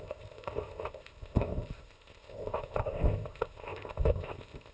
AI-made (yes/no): yes